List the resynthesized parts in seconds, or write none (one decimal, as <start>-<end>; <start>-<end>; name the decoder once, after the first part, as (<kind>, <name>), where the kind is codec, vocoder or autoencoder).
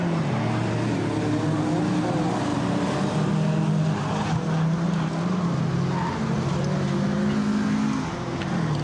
2.5-3.3 (vocoder, BigVGAN v2); 6.1-6.6